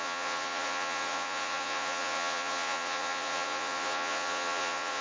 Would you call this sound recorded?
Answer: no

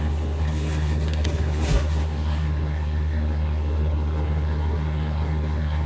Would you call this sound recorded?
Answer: no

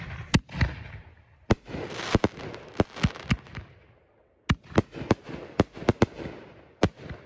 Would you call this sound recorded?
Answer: yes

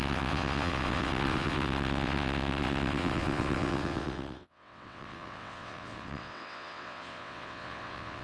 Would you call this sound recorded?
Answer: no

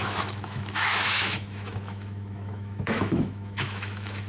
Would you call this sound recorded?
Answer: no